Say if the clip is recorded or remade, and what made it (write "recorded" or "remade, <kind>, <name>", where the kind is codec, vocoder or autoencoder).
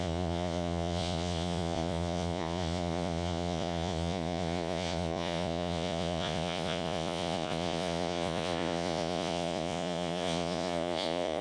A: remade, vocoder, Vocos